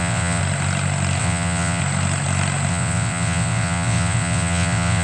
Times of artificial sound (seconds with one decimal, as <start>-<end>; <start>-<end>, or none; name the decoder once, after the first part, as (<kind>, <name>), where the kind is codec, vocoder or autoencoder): 0.0-0.4 (vocoder, WaveNeXt); 1.2-1.8; 2.7-5.0